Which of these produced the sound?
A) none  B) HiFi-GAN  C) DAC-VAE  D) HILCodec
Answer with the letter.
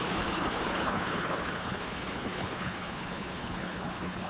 D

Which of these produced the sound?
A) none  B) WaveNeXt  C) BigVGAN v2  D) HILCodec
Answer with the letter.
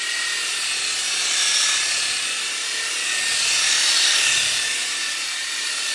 A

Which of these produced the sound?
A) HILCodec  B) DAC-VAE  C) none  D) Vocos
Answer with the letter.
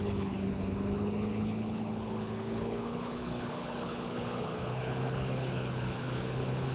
A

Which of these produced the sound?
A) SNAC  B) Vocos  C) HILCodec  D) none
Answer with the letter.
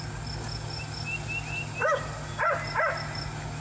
D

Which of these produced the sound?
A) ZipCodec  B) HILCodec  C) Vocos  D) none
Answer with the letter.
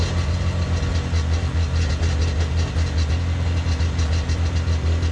D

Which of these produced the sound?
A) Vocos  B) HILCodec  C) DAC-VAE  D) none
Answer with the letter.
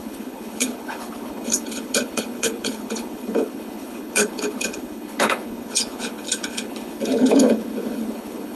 B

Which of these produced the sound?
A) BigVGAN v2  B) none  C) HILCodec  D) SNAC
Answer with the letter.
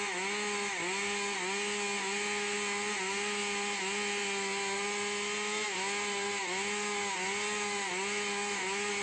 B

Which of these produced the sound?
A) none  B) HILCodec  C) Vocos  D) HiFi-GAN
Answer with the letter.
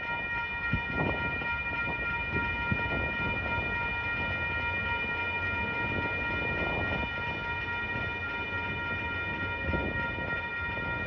A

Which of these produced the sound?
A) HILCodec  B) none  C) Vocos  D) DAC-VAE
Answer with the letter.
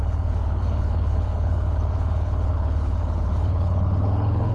A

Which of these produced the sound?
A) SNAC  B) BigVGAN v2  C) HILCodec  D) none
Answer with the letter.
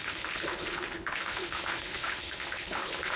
C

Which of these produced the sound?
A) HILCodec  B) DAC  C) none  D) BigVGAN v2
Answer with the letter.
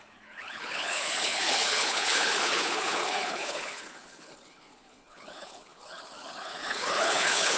A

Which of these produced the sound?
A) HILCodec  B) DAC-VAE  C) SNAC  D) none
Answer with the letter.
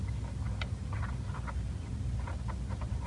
D